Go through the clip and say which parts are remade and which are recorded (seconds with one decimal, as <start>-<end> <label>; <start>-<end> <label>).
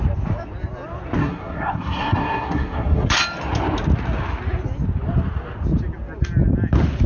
0.0-1.2 recorded; 1.2-3.1 remade; 3.1-7.1 recorded